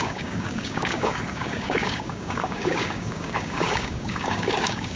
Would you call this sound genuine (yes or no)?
no